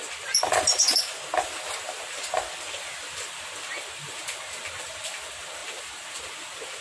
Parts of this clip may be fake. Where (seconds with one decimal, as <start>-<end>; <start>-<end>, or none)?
0.0-3.2

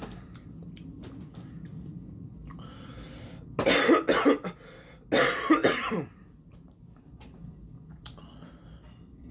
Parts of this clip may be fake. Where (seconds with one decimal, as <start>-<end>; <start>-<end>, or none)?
0.0-2.4; 5.9-9.3

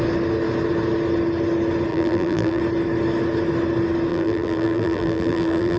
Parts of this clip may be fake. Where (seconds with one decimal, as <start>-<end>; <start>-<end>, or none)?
1.9-2.6; 4.1-5.8

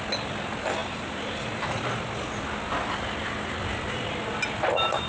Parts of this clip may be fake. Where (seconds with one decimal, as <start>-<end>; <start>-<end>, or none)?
0.8-1.8

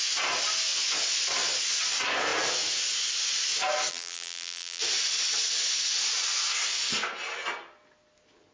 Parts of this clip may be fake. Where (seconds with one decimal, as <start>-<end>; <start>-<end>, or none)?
3.9-4.8

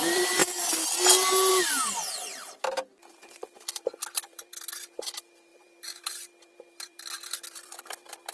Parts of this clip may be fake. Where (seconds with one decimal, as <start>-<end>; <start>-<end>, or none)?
0.0-0.4; 1.5-8.3

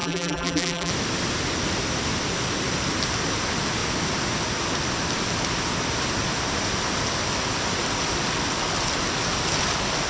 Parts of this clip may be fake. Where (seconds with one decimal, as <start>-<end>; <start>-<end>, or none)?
0.0-0.9

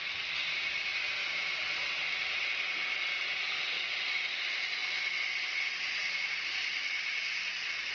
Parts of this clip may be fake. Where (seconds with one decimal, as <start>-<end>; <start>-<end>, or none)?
6.0-7.5